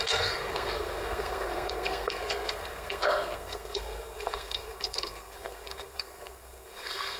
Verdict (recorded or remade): remade